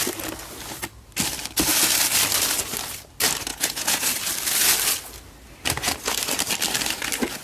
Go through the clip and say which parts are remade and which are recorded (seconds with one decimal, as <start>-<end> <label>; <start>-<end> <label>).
0.0-3.5 recorded; 3.5-4.1 remade; 4.1-7.4 recorded